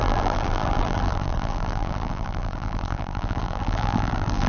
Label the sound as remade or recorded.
remade